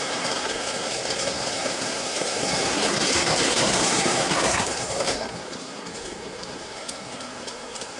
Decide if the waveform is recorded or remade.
remade